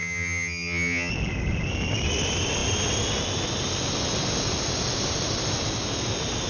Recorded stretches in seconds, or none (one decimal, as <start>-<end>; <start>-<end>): 1.1-6.5